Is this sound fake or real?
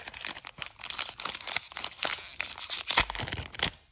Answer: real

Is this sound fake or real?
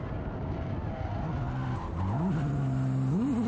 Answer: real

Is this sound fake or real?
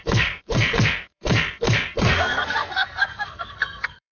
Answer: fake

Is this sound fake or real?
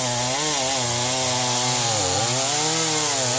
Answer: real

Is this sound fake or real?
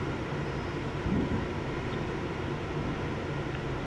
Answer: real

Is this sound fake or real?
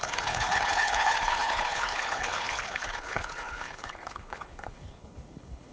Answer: fake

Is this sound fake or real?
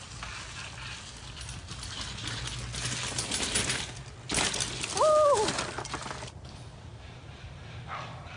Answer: real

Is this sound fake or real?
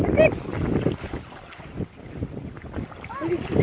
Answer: real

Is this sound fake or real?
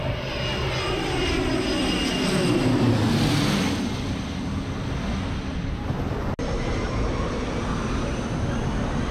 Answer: real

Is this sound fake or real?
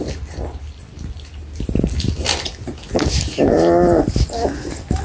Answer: real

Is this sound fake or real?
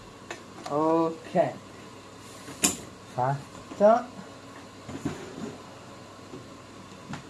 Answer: real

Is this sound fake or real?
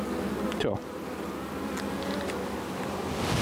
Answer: real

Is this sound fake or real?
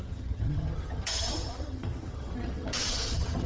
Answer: fake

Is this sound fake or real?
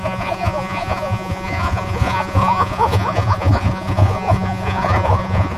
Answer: fake